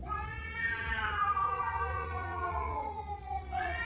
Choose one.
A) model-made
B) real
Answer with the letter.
A